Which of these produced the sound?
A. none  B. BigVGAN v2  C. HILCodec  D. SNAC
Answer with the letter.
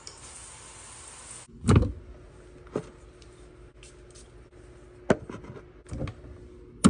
A